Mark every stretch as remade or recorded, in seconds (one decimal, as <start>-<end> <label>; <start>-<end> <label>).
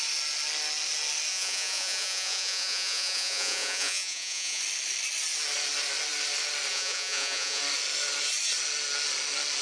0.0-1.3 recorded; 1.3-4.6 remade; 4.6-6.7 recorded; 6.7-7.6 remade; 7.6-9.6 recorded